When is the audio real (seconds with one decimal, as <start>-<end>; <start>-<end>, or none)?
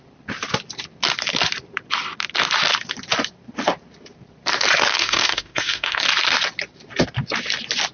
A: 0.0-4.9; 6.0-7.9